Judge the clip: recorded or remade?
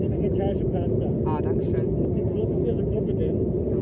recorded